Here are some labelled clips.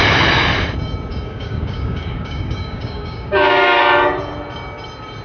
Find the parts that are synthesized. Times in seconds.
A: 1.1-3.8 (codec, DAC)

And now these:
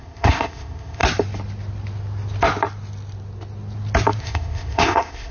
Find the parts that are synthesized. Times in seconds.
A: 0.0-1.0 (codec, ZipCodec); 4.2-5.3

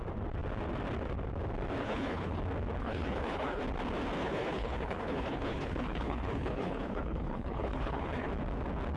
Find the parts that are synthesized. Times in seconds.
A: 1.8-2.4 (codec, HILCodec); 2.8-3.6; 4.2-8.3

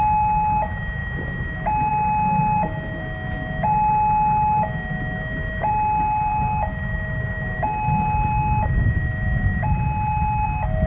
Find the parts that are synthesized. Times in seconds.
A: none

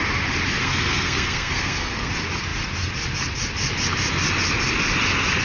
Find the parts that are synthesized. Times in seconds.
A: 0.6-2.1 (codec, SNAC)

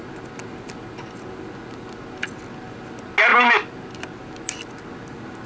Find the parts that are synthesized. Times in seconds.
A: none